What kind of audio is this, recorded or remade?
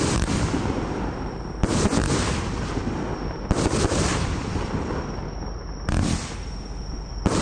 recorded